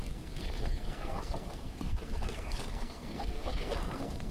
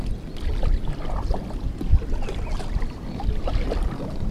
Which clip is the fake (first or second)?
first